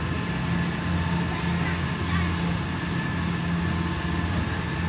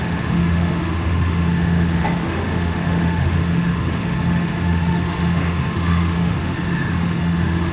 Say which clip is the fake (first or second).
second